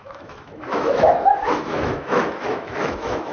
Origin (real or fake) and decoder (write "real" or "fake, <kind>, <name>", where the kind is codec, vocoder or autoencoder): fake, autoencoder, DAC-VAE